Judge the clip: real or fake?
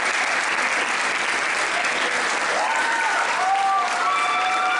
real